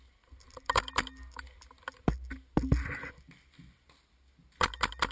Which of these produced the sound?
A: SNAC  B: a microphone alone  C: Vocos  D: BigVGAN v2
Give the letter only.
B